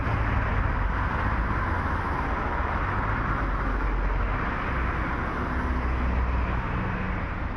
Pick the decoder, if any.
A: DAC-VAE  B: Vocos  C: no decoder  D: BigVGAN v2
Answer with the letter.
C